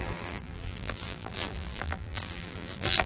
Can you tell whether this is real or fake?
fake